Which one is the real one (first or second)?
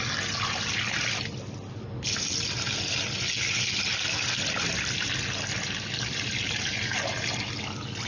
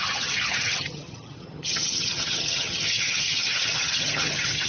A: first